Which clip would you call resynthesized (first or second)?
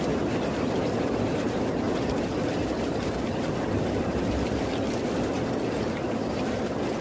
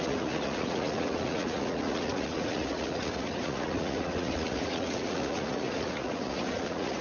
second